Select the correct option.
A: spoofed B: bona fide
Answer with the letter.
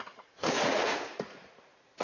A